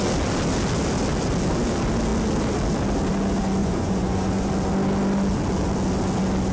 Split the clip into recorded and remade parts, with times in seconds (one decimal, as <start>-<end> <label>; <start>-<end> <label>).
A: 0.0-3.6 recorded; 3.6-4.5 remade; 4.5-6.5 recorded